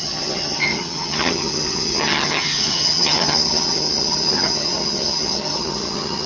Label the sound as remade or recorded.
remade